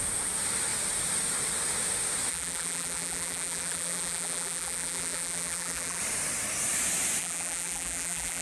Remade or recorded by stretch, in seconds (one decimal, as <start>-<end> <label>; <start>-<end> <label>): 0.0-2.3 recorded; 2.3-6.0 remade; 6.0-7.2 recorded; 7.2-8.4 remade